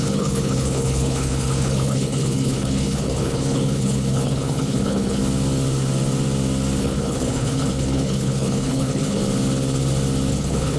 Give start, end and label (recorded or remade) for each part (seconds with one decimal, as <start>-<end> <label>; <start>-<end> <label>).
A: 0.0-5.2 remade; 5.2-6.8 recorded; 6.8-9.2 remade; 9.2-10.3 recorded; 10.3-10.8 remade